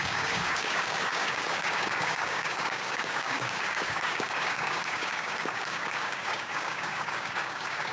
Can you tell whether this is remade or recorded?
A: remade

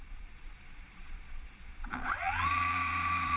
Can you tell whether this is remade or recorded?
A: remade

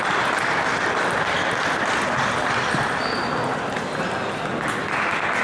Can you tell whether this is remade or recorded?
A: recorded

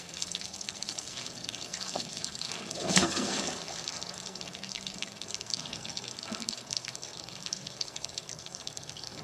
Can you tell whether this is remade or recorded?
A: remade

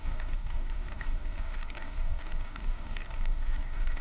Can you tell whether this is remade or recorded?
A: remade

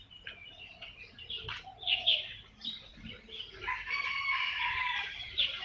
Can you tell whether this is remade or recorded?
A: remade